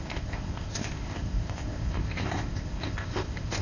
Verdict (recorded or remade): remade